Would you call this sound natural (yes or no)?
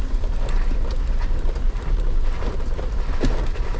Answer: yes